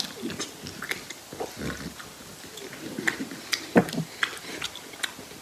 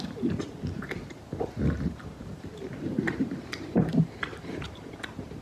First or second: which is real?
first